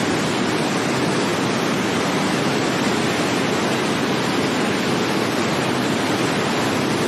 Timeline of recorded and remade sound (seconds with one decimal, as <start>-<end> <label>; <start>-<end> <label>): 0.0-7.1 recorded